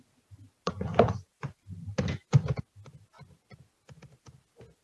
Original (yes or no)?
yes